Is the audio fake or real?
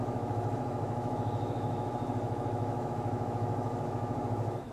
fake